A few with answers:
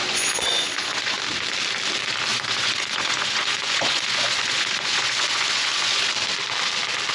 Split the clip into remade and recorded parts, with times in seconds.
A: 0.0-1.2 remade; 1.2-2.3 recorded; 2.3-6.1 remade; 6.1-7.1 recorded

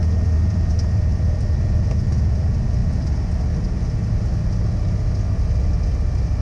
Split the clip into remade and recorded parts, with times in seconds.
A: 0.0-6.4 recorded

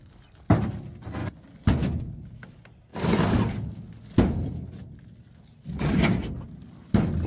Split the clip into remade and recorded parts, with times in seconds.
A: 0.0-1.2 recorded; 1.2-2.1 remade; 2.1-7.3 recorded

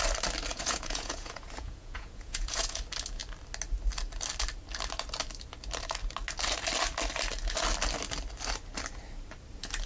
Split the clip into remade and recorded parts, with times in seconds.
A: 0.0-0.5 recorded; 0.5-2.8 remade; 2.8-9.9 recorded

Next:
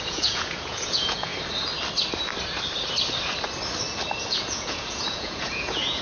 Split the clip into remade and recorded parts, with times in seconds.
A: 0.0-1.3 remade; 1.3-4.3 recorded; 4.3-6.0 remade